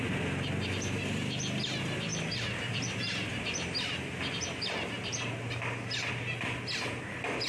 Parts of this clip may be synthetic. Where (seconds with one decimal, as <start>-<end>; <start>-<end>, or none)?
none